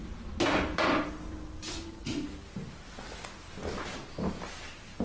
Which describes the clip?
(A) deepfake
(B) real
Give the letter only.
B